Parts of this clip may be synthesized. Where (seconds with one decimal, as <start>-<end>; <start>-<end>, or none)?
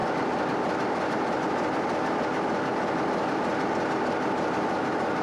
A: 0.0-2.2